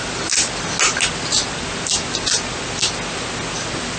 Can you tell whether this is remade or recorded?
recorded